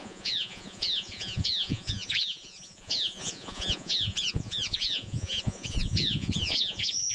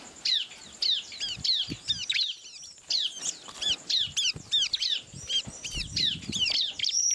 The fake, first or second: first